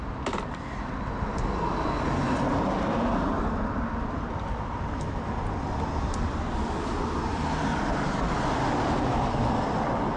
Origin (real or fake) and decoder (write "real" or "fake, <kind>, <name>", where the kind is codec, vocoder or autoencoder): real